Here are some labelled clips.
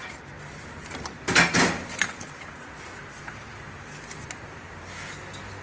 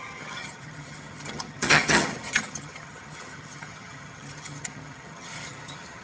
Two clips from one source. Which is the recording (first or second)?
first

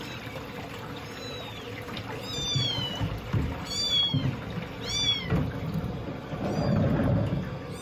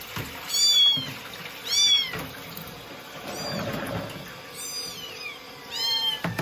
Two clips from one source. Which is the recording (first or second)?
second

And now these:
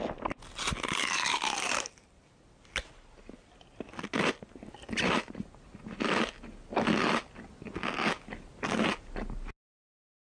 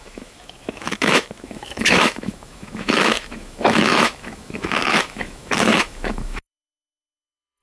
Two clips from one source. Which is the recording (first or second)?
first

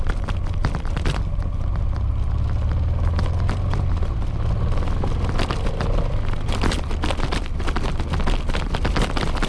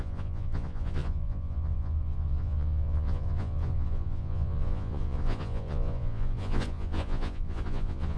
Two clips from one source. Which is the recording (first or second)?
first